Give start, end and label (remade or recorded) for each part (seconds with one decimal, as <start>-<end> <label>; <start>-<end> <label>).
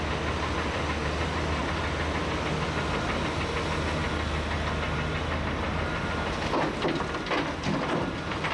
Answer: 0.0-8.5 recorded